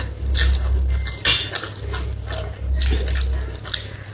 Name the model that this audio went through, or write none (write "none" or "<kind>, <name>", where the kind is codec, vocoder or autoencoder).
none